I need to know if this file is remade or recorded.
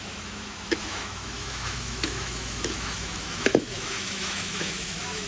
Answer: remade